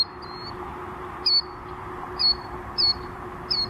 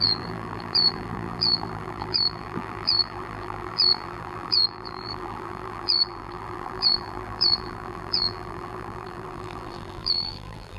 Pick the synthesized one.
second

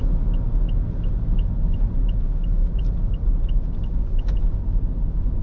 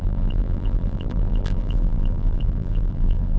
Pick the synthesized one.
second